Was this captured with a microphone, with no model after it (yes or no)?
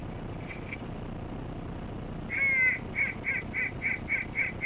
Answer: yes